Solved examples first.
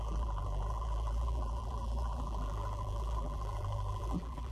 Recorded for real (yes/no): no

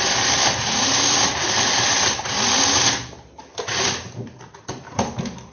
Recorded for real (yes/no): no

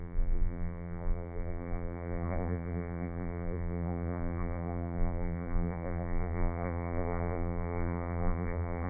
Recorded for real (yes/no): no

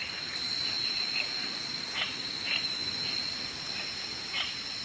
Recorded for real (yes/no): yes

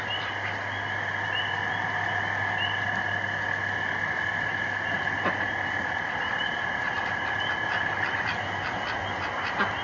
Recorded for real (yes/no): yes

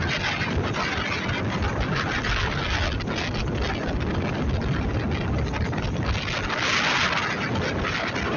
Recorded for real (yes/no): yes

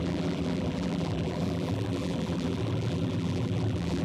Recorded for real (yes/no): no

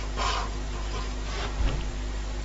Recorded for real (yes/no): yes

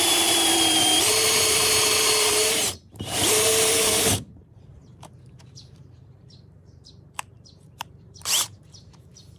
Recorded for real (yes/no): no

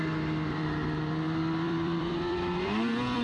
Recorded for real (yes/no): no